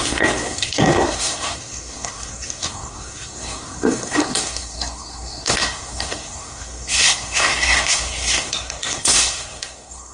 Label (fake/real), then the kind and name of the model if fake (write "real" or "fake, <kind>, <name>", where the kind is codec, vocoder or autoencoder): fake, codec, SNAC